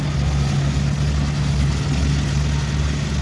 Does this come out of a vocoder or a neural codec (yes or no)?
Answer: no